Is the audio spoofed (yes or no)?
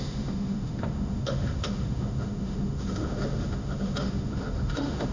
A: yes